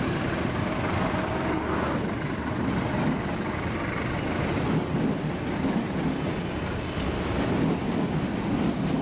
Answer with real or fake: real